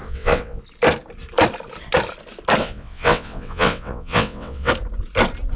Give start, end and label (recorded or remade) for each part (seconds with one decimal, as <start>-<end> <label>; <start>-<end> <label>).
0.0-0.6 remade; 0.6-2.6 recorded; 2.6-4.7 remade; 4.7-5.6 recorded

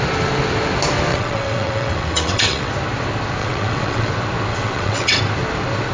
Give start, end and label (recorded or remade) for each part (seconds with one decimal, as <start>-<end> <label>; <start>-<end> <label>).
0.0-1.1 recorded; 1.1-2.7 remade; 2.7-3.4 recorded; 3.4-4.1 remade; 4.1-4.5 recorded; 4.5-5.2 remade; 5.2-5.9 recorded

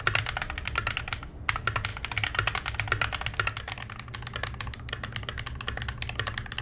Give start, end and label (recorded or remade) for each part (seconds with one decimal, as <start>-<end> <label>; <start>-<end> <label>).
0.0-6.6 recorded